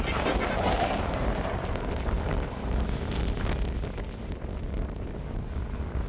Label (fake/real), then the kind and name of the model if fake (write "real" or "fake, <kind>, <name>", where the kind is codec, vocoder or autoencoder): real